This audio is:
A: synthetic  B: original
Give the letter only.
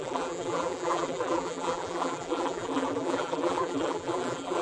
A